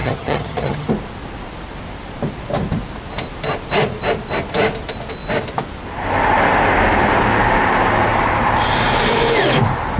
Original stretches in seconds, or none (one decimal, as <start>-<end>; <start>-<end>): 0.9-10.0